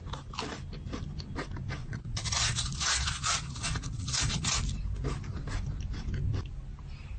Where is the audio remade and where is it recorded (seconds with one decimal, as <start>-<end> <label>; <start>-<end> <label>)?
0.0-1.8 recorded; 1.8-4.6 remade; 4.6-7.2 recorded